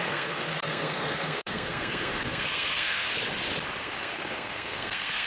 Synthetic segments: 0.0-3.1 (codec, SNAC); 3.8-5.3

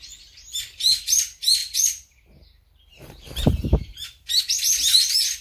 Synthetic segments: 1.6-4.4 (vocoder, BigVGAN v2)

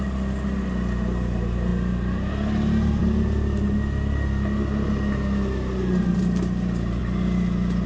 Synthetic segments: none

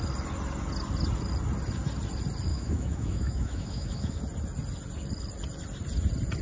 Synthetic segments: 2.5-4.2 (autoencoder, DAC-VAE)